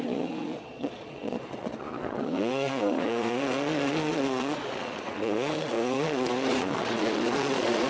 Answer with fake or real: fake